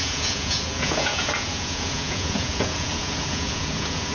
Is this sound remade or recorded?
remade